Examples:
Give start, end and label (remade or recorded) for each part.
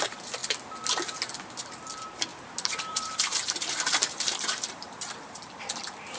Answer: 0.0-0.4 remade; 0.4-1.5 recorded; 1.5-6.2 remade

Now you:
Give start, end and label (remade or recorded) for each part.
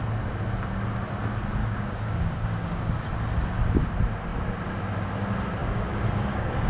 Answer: 0.0-1.6 recorded; 1.6-3.0 remade; 3.0-5.6 recorded; 5.6-6.7 remade